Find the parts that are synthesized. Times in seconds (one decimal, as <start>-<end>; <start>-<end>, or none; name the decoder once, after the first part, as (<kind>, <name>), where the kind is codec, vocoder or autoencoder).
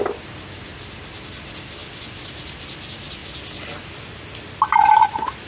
none